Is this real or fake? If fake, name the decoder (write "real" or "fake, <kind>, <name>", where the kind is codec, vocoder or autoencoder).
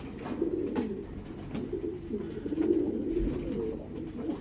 real